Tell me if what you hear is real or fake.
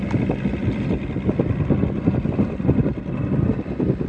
real